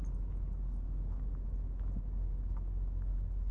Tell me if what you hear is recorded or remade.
recorded